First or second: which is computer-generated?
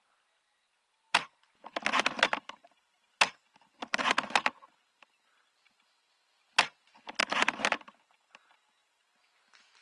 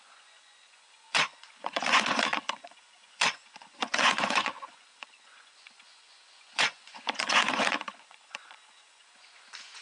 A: second